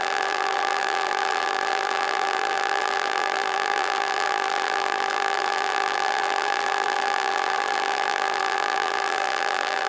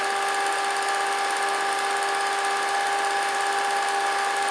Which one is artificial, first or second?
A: first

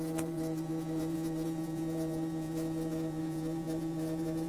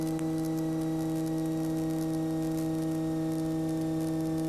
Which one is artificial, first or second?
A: first